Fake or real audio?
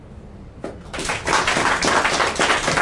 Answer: real